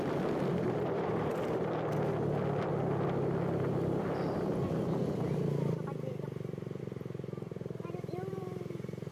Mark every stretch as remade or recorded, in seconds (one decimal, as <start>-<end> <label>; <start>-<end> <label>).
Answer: 0.0-0.5 recorded; 0.5-1.3 remade; 1.3-8.3 recorded; 8.3-9.1 remade